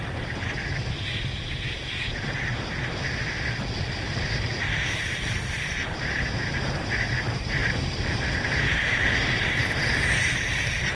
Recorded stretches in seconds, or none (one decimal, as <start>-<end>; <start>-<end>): 7.6-8.1